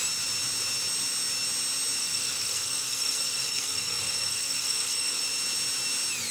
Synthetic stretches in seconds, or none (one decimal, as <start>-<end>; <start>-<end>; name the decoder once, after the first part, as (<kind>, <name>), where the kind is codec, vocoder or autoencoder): 2.0-5.2 (codec, SNAC)